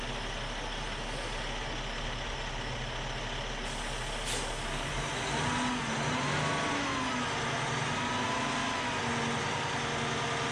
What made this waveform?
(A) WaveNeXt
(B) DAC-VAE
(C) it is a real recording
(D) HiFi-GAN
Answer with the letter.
C